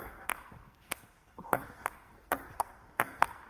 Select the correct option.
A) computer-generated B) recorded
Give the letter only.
A